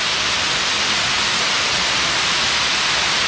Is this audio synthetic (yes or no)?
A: no